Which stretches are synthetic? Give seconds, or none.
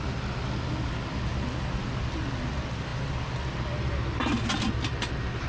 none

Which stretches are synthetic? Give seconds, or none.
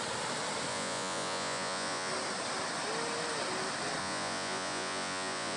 0.7-2.1 (vocoder, Vocos); 4.0-5.6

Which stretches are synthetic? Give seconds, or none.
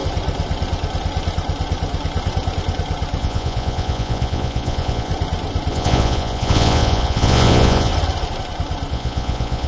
3.2-5.1 (vocoder, Vocos); 5.7-7.9; 8.9-9.7